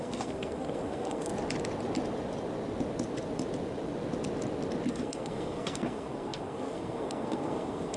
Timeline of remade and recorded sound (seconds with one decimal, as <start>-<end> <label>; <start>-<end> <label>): 0.0-1.3 remade; 1.3-4.9 recorded; 4.9-8.0 remade